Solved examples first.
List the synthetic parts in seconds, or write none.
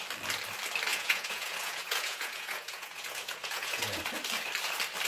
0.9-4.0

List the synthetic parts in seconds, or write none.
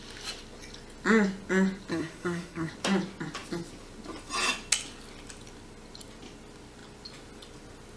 1.9-2.7